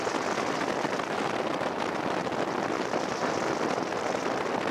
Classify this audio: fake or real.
real